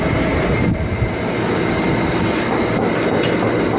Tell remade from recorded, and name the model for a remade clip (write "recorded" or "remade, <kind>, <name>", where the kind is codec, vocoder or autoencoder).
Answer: recorded